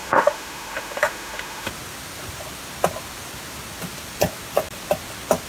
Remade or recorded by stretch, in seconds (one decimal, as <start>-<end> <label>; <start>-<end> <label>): 0.0-1.7 remade; 1.7-5.5 recorded